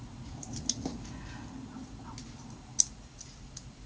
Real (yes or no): yes